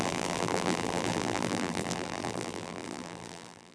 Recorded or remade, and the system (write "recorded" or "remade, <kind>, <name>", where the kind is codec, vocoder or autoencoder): remade, vocoder, BigVGAN v2